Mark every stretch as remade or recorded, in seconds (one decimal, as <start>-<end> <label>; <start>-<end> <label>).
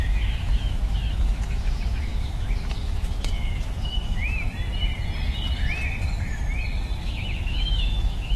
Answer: 0.0-4.2 remade; 4.2-7.0 recorded; 7.0-8.4 remade